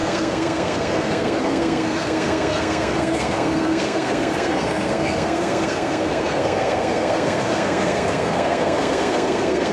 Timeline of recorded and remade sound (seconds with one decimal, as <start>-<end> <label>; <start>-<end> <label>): 0.0-9.7 remade